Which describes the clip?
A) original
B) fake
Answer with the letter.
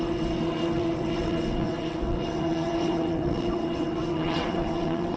B